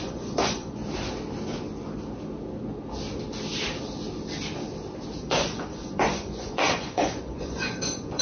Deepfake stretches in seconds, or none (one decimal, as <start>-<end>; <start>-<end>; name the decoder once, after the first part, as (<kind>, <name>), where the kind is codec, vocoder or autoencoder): 0.0-0.8 (vocoder, Vocos); 5.2-8.2